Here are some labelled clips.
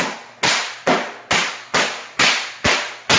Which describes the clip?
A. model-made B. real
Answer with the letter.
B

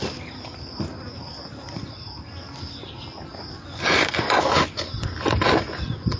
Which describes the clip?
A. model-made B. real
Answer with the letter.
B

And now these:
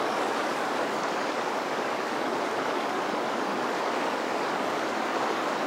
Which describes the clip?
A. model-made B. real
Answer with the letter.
A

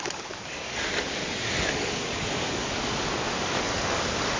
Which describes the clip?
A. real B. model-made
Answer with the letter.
B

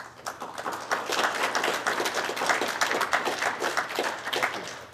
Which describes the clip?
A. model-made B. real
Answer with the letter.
B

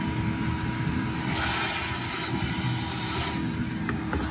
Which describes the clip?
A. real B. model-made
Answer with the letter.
A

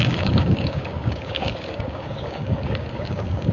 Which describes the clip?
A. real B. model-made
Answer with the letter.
B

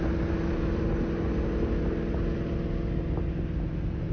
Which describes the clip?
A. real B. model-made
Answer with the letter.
A